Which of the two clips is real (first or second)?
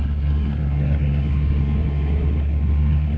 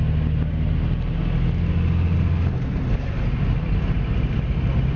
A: second